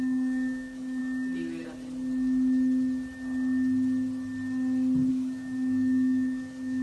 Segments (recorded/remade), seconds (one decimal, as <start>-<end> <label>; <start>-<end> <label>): 0.0-1.0 remade; 1.0-5.1 recorded; 5.1-6.8 remade